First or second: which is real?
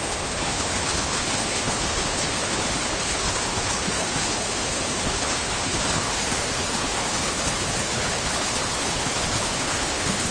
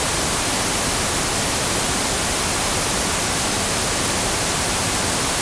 second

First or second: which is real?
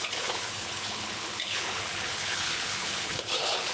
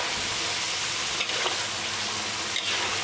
second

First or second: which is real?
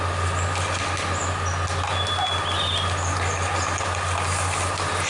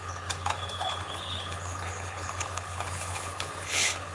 first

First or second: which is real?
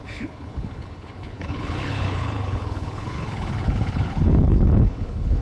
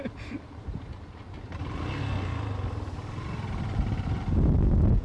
second